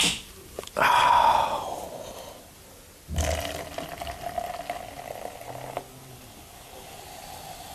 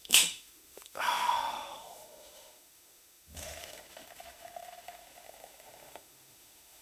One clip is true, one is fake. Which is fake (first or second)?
second